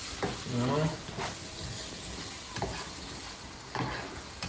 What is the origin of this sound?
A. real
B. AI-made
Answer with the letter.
A